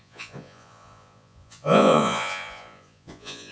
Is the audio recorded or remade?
remade